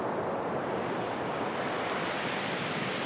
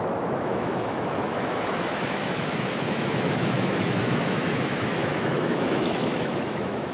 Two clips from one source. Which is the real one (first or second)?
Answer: first